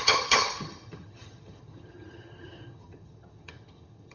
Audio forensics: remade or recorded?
remade